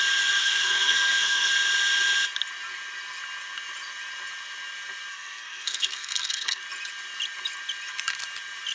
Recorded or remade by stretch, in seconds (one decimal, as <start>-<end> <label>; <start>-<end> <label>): 0.0-0.4 recorded; 0.4-1.5 remade; 1.5-5.1 recorded; 5.1-6.6 remade; 6.6-8.7 recorded